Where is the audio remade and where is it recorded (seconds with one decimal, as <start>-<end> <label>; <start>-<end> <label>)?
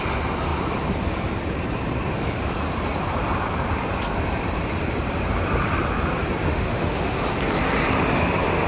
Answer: 0.0-6.5 recorded; 6.5-7.2 remade; 7.2-8.7 recorded